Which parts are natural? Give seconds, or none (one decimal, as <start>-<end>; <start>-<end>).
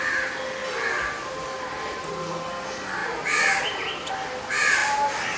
0.0-0.6; 2.1-5.4